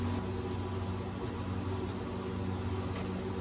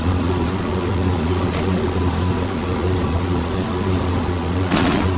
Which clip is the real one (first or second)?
first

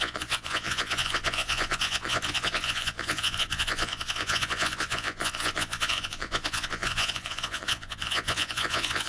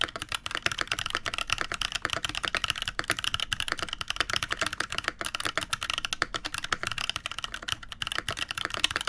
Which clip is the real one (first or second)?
second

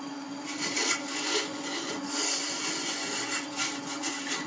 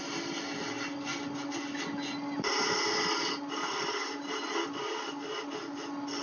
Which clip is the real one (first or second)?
second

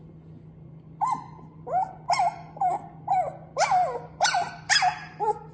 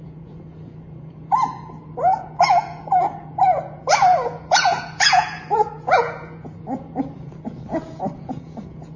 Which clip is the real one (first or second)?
first